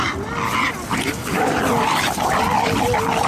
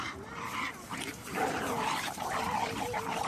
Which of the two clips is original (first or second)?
first